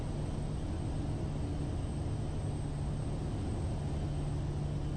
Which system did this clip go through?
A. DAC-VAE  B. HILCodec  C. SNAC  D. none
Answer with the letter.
D